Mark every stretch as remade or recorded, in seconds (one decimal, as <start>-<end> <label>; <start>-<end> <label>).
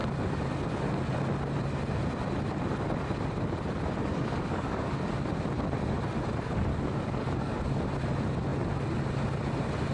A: 0.0-4.1 recorded; 4.1-4.9 remade; 4.9-6.7 recorded; 6.7-7.6 remade; 7.6-9.9 recorded